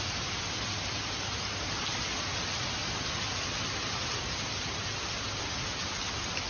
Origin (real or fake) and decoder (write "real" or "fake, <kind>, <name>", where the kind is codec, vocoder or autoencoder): real